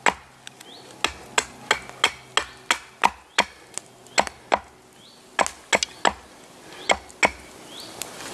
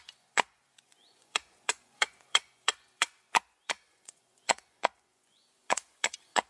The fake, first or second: second